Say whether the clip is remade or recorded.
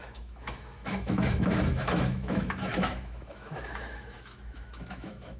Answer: remade